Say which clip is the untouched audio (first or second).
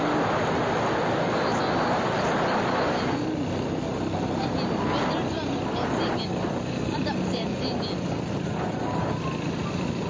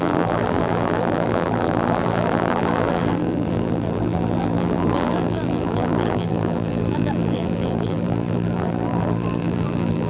first